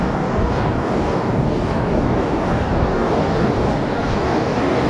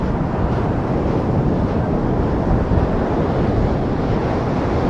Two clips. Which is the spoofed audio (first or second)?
first